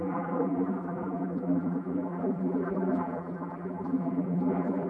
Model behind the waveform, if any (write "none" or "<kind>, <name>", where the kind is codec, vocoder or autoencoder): vocoder, BigVGAN v2